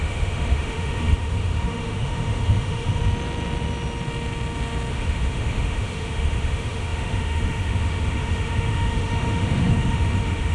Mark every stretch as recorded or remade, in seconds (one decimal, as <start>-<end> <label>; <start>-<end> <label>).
0.0-3.0 remade; 3.0-4.9 recorded; 4.9-10.5 remade